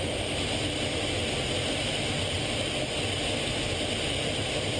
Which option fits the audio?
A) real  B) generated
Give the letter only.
A